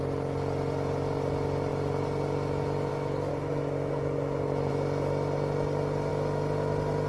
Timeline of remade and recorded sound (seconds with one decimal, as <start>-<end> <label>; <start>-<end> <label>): 0.0-3.3 recorded; 3.3-4.7 remade; 4.7-7.1 recorded